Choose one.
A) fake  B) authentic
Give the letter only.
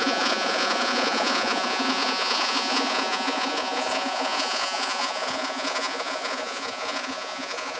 A